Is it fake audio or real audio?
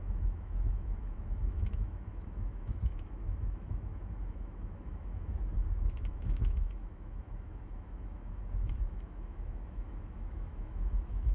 fake